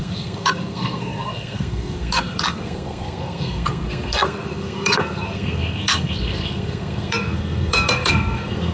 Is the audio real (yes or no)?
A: no